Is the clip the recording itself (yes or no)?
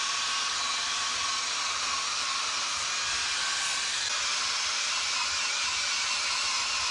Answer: yes